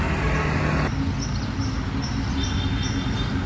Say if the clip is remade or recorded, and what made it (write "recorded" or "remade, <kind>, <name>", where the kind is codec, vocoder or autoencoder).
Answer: recorded